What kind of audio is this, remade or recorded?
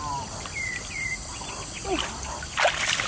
recorded